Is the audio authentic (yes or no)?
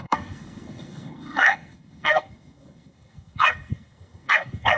no